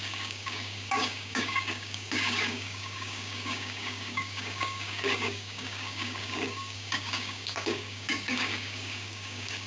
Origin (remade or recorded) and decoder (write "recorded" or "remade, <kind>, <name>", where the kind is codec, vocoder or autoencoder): remade, codec, DAC